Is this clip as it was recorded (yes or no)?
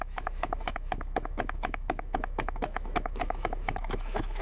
no